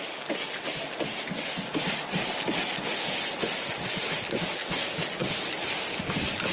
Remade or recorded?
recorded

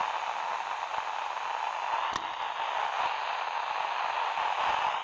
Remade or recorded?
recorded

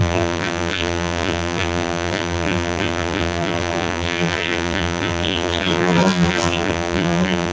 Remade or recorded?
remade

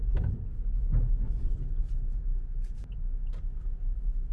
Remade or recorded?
recorded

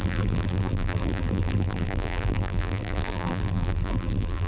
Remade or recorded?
remade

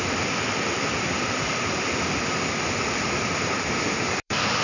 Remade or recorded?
remade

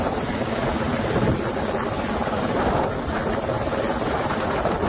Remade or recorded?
remade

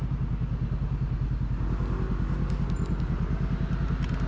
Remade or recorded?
recorded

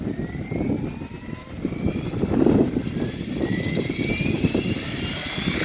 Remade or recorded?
recorded